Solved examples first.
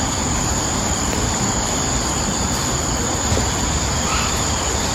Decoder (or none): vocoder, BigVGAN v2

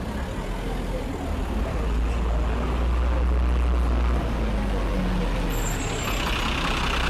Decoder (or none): none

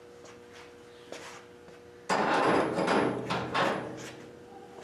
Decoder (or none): none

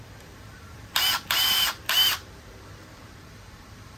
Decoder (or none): vocoder, BigVGAN v2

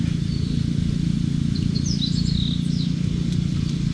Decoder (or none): none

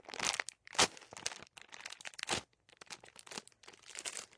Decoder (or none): none